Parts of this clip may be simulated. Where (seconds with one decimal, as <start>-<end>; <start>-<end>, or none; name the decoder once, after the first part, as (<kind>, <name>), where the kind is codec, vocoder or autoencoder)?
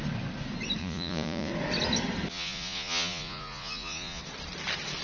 0.8-1.5 (vocoder, Vocos); 2.3-4.2